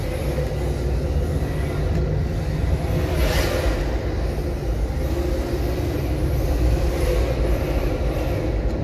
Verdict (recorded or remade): recorded